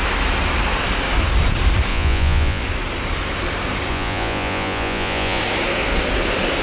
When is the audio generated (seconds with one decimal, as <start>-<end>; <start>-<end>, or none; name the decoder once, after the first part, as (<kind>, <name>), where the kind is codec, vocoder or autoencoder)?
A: 1.9-2.6 (vocoder, Vocos); 3.9-5.4